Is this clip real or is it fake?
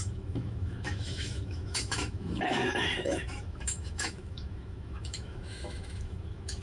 fake